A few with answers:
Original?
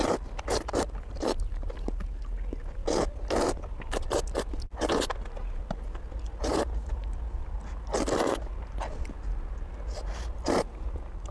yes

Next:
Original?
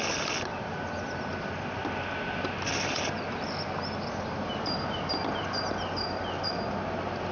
yes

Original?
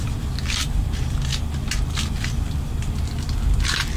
yes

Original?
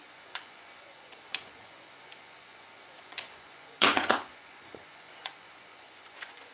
no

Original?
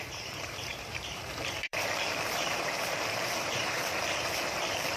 no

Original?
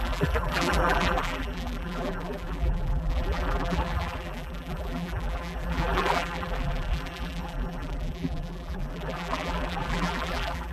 no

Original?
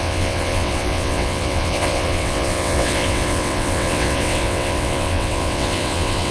no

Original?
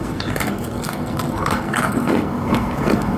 no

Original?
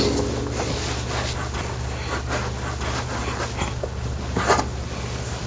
yes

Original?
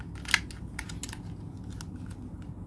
yes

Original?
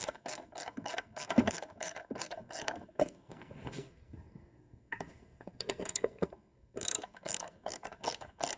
no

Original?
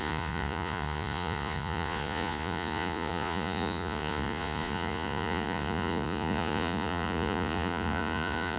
no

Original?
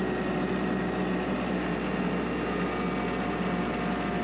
yes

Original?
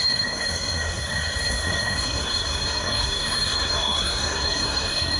no